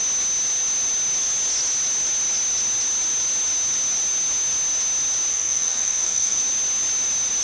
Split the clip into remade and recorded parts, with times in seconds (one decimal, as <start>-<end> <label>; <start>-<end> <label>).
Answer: 0.0-5.3 recorded; 5.3-6.4 remade; 6.4-7.4 recorded